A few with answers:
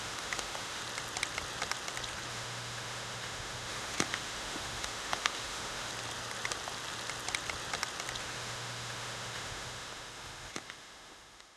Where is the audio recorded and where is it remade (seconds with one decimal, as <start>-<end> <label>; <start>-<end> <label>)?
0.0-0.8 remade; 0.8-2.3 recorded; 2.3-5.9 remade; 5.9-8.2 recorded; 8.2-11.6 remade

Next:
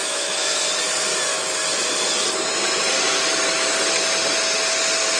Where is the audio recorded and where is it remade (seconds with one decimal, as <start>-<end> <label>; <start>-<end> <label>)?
0.0-0.6 remade; 0.6-5.2 recorded

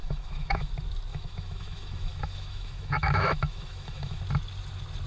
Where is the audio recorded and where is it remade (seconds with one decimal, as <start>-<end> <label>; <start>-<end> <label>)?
0.0-0.7 remade; 0.7-1.1 recorded; 1.1-4.2 remade; 4.2-5.1 recorded

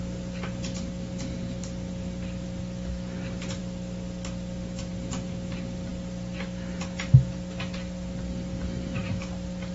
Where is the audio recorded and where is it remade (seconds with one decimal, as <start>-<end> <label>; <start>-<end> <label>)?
0.0-9.7 recorded